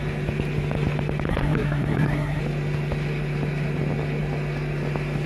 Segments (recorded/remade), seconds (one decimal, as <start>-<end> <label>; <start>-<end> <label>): 0.0-1.3 recorded; 1.3-2.4 remade; 2.4-5.3 recorded